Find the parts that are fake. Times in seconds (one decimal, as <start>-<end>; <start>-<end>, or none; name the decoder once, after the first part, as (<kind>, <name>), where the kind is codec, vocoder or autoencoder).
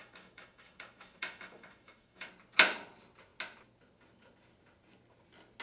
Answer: 0.0-2.3 (autoencoder, DAC-VAE)